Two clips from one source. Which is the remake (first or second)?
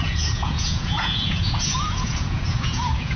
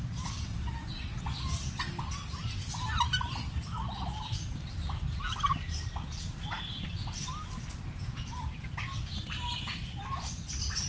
first